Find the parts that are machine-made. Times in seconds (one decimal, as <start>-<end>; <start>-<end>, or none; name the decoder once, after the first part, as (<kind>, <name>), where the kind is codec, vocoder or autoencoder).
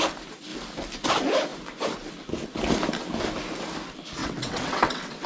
4.2-5.3 (vocoder, WaveNeXt)